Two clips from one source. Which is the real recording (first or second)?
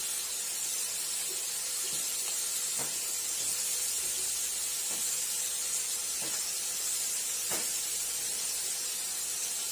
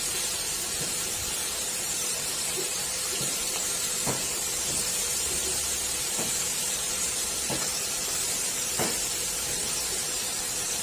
first